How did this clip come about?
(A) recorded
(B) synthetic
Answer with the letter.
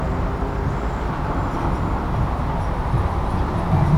A